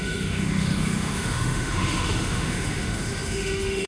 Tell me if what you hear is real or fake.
fake